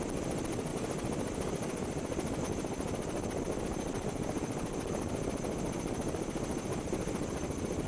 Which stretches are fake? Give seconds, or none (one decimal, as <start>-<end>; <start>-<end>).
none